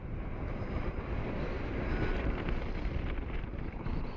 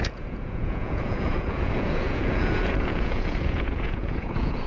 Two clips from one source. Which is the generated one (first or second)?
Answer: second